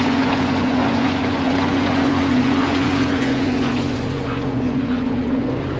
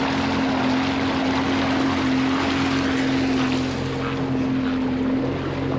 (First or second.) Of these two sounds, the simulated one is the first